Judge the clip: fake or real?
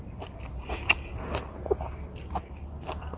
real